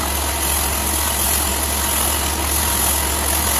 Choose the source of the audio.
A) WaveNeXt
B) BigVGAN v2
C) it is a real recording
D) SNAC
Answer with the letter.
C